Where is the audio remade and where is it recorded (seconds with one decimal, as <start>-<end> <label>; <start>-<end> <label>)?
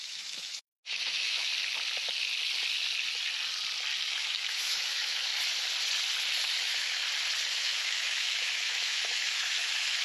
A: 0.0-1.5 remade; 1.5-4.1 recorded; 4.1-5.3 remade; 5.3-6.6 recorded; 6.6-7.0 remade; 7.0-7.5 recorded; 7.5-10.0 remade